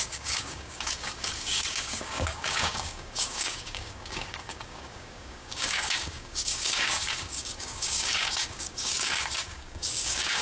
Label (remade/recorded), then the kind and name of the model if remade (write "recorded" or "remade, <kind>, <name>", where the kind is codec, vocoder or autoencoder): remade, codec, DAC